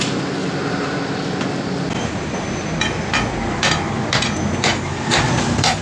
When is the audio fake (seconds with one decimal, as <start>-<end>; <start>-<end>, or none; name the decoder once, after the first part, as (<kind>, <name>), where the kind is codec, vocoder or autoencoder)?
0.4-1.1 (vocoder, BigVGAN v2)